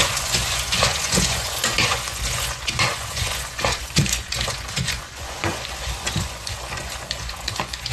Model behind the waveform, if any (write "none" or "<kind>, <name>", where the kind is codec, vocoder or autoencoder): vocoder, Vocos